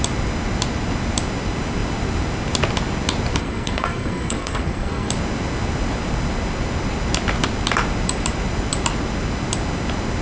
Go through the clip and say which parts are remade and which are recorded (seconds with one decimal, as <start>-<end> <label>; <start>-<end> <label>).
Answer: 0.0-3.4 recorded; 3.4-5.1 remade; 5.1-10.2 recorded